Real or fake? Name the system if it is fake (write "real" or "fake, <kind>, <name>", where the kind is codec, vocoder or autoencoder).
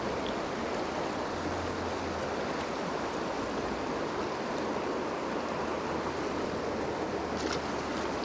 real